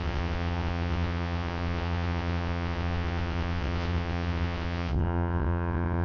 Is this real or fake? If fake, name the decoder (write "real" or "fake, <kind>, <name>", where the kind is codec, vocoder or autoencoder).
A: fake, vocoder, WaveNeXt